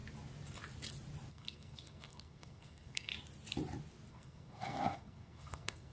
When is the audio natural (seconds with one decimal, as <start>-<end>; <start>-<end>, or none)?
0.0-1.3; 3.1-4.1